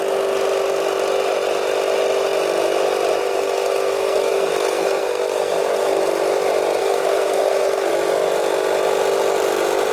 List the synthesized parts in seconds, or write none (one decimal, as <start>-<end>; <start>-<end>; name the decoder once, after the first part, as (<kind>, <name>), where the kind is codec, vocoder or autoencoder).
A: 3.2-6.0 (codec, SNAC); 6.8-7.9